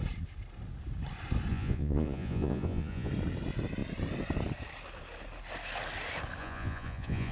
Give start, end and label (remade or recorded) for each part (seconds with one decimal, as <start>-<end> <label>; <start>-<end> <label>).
0.0-1.5 recorded; 1.5-3.1 remade; 3.1-6.4 recorded; 6.4-7.3 remade